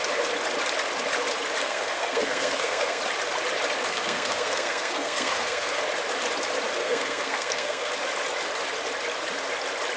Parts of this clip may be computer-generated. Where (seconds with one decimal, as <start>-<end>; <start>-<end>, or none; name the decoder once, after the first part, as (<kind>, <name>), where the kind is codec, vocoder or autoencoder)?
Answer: 1.6-3.0 (codec, SNAC); 3.8-5.8; 6.8-7.9